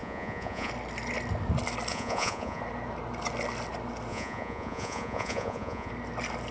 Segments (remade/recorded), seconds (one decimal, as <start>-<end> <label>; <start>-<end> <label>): 0.0-0.7 remade; 0.7-1.9 recorded; 1.9-2.6 remade; 2.6-4.1 recorded; 4.1-5.9 remade; 5.9-6.5 recorded

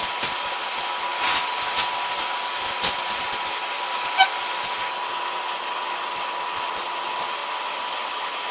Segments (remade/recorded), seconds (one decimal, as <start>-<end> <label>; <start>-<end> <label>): 0.0-8.5 recorded

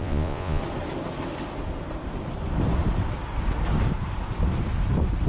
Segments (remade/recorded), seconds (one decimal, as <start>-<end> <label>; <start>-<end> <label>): 0.0-0.6 remade; 0.6-5.3 recorded

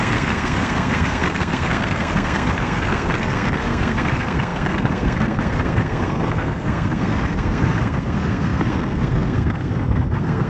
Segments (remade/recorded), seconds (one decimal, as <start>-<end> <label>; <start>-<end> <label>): 0.0-10.5 remade